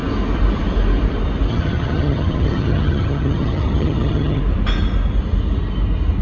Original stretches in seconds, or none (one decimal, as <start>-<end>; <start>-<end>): 0.0-1.5; 4.4-6.2